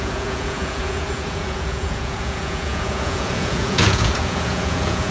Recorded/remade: remade